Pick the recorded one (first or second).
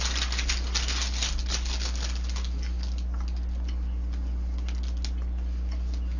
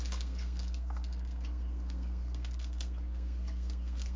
first